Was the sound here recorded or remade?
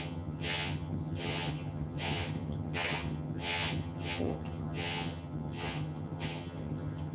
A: remade